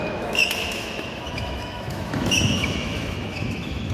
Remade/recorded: remade